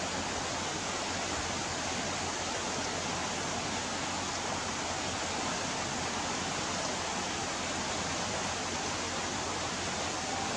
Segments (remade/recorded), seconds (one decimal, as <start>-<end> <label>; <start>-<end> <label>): 0.0-10.6 recorded